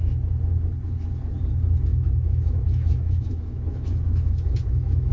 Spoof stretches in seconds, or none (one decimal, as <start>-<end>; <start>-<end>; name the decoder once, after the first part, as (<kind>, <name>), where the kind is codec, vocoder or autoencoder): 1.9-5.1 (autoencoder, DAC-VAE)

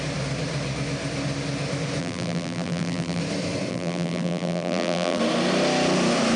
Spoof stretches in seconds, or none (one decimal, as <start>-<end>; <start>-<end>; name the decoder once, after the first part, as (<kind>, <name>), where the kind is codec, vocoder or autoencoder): 2.0-3.2 (vocoder, BigVGAN v2); 3.7-5.2

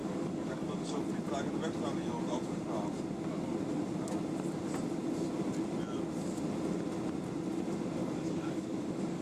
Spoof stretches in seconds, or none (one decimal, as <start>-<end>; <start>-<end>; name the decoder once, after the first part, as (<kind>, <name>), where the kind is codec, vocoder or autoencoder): 0.0-1.0 (codec, DAC); 8.0-9.2